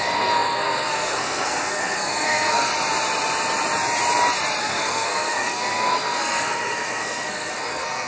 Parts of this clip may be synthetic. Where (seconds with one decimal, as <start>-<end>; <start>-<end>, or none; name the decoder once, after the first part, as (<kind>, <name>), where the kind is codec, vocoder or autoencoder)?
0.0-2.7 (codec, SNAC); 4.6-8.1